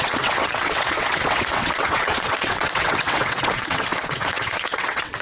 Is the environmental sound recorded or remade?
remade